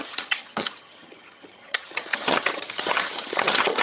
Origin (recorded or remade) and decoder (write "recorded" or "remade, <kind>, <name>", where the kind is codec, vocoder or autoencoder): remade, vocoder, HiFi-GAN